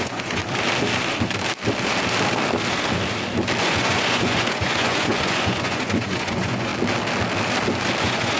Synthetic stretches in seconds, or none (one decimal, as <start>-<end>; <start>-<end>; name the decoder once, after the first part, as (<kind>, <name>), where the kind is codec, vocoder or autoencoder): 0.0-0.4 (vocoder, Vocos); 3.6-6.7; 8.0-8.4